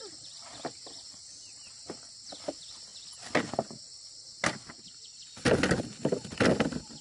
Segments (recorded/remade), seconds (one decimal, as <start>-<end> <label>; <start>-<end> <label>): 0.0-7.0 recorded